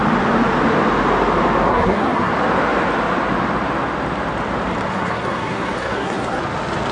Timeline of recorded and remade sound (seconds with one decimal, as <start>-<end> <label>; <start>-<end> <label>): 0.0-1.7 recorded; 1.7-2.3 remade; 2.3-4.9 recorded; 4.9-6.4 remade; 6.4-6.9 recorded